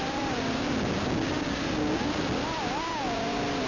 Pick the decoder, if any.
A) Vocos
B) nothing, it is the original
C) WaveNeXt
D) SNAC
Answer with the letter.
B